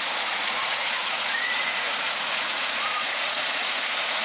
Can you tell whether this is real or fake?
fake